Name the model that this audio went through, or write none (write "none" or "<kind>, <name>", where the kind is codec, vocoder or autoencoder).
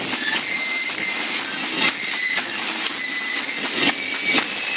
none